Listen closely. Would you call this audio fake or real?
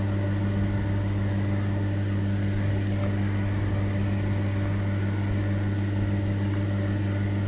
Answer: real